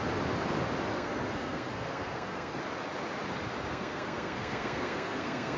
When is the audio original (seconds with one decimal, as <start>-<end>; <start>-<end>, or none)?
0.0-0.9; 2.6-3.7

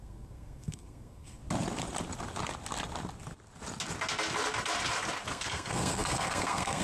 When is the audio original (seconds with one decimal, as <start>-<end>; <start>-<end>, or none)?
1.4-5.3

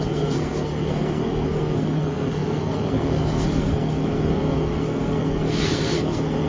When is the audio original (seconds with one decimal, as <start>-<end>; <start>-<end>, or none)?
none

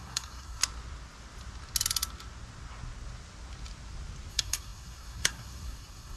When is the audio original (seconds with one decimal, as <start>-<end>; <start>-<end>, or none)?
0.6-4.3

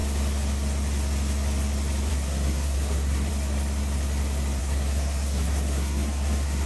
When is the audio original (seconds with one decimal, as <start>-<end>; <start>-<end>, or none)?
0.0-2.1; 3.3-4.6

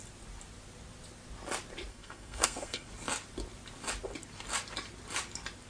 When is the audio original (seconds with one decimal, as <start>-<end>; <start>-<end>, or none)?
0.0-1.9; 2.9-5.7